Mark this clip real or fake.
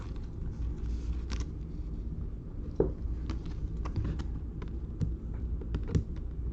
real